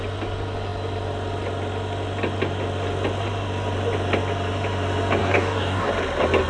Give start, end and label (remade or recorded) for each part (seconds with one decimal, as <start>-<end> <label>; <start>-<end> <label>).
0.0-5.2 recorded; 5.2-5.9 remade; 5.9-6.5 recorded